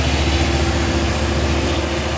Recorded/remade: recorded